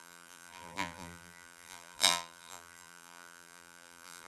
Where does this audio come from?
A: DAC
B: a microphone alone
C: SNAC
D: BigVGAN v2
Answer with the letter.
D